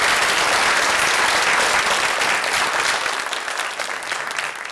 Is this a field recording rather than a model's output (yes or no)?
yes